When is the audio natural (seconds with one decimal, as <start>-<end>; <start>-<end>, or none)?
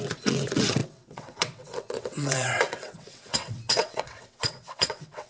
none